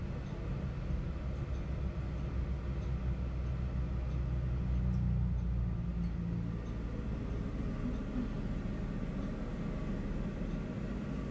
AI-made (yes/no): no